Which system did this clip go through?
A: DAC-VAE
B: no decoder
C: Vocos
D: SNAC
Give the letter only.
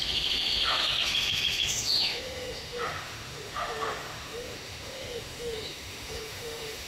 A